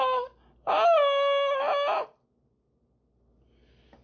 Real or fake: real